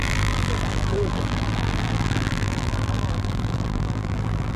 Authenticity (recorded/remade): remade